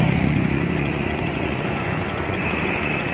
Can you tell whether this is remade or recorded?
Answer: remade